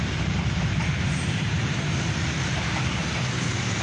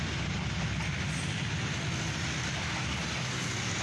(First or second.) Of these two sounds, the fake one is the first